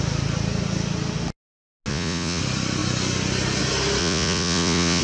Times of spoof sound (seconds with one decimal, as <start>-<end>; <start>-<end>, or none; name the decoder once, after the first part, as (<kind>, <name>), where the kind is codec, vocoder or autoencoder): 1.9-2.4 (vocoder, Vocos); 4.0-5.0